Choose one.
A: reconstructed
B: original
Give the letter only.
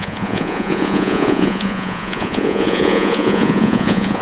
A